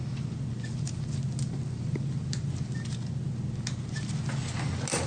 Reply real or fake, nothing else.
real